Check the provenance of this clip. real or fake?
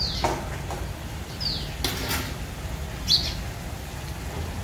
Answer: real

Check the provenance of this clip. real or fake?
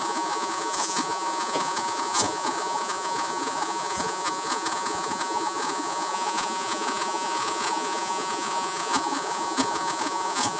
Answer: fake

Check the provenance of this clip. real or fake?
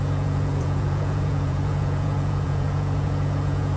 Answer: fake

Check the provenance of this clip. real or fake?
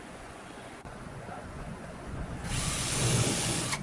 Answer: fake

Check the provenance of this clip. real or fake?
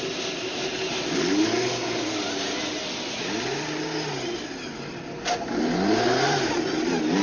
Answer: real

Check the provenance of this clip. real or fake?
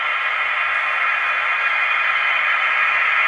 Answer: real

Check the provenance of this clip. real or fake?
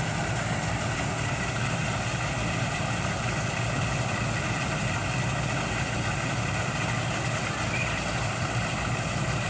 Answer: real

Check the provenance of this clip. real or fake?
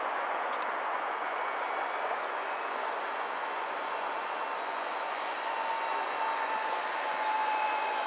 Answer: fake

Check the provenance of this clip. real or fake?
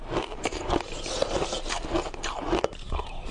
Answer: real